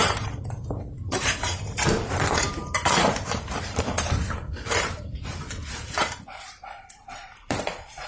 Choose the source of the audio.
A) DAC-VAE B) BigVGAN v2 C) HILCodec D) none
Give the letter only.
B